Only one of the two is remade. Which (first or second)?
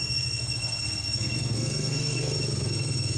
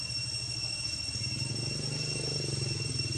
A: first